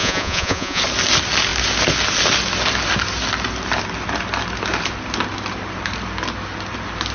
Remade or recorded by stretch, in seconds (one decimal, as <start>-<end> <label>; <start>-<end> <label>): 0.0-0.8 remade; 0.8-7.1 recorded